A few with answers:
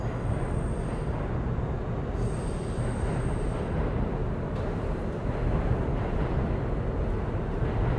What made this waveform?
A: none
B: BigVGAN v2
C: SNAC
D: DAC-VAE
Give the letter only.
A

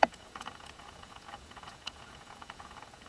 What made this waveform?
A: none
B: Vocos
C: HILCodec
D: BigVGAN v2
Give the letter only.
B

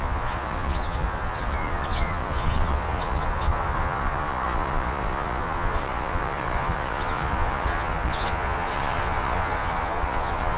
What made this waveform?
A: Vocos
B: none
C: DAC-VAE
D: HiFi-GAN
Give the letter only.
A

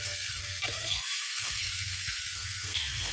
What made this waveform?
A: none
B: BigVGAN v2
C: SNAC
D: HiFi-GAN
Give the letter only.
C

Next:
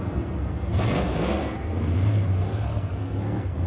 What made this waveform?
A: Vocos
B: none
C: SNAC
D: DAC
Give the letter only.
C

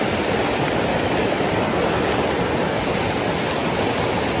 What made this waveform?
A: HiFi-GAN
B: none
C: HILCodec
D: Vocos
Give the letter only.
B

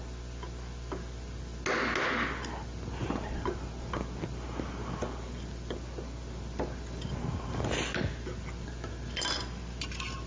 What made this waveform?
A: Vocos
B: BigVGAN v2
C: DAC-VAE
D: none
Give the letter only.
D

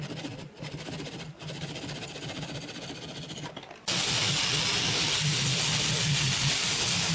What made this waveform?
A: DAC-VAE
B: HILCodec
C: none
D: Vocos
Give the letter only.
C